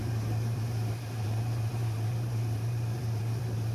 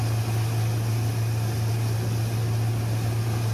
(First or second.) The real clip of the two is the second